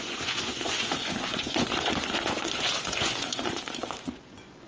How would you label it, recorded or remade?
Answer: remade